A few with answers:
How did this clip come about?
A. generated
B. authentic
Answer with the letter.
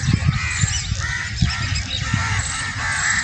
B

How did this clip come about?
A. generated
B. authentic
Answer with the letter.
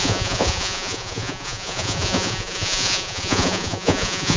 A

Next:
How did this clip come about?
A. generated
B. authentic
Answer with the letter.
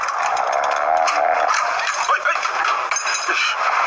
B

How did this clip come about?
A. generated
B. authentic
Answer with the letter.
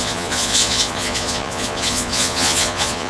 A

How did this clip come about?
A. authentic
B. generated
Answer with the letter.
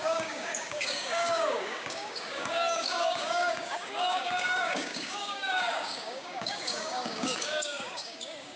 B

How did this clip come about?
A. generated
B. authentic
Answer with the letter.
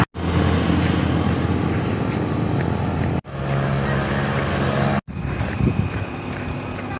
B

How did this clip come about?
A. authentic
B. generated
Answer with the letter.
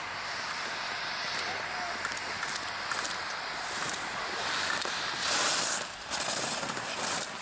A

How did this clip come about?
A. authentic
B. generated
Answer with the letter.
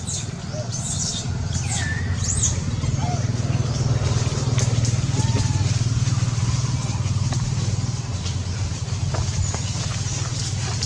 A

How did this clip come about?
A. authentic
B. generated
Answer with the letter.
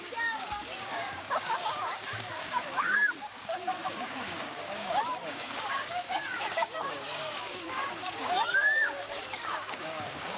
B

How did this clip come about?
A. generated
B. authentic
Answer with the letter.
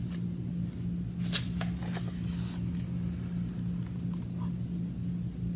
B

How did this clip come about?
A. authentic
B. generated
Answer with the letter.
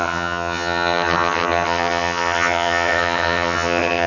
B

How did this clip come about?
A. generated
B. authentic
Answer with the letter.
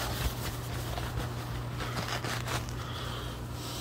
B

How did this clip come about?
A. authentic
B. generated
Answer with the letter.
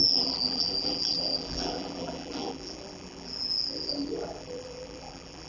B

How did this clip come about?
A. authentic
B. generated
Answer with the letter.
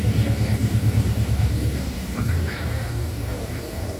B